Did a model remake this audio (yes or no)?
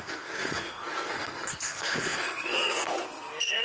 yes